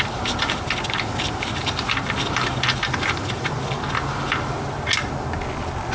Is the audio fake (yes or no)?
no